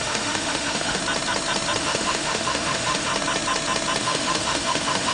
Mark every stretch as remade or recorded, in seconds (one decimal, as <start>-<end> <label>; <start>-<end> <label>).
0.0-1.0 remade; 1.0-1.8 recorded; 1.8-3.1 remade; 3.1-4.0 recorded; 4.0-5.1 remade